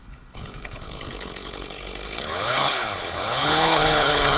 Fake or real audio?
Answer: fake